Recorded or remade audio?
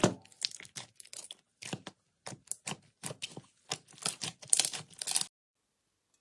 recorded